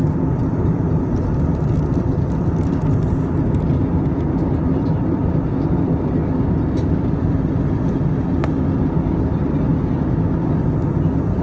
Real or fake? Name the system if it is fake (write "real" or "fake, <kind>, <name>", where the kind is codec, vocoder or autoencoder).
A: real